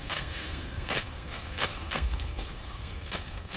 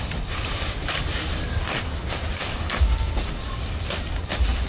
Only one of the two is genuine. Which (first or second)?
second